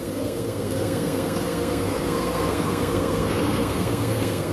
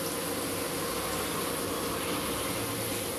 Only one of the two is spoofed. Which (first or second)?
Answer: first